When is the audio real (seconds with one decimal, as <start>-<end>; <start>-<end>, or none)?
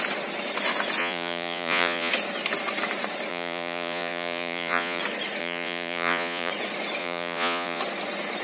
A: 0.0-1.0; 2.1-3.3; 5.0-5.4; 6.5-7.0; 7.8-8.4